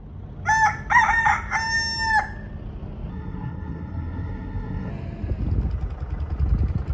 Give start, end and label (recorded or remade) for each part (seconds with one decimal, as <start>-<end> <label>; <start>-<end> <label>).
0.0-3.1 recorded; 3.1-4.9 remade; 4.9-6.9 recorded